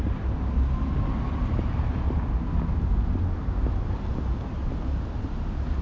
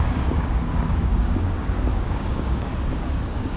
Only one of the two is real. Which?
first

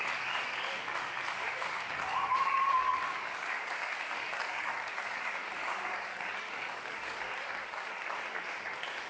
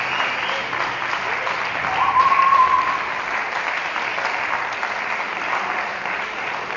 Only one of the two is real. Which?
second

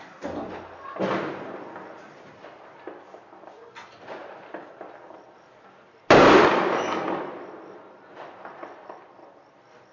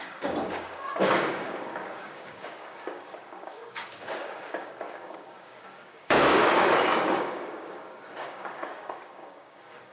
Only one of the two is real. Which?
first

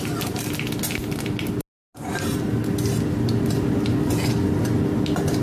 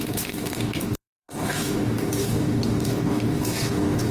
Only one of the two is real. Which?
first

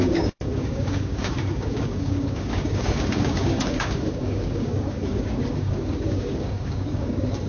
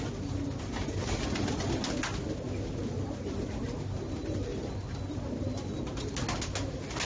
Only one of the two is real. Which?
second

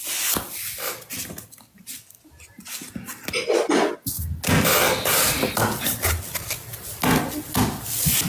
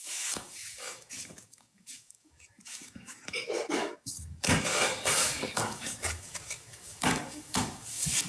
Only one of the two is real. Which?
first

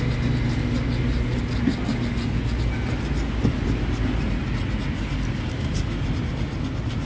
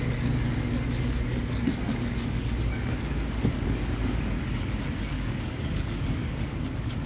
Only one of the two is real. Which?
first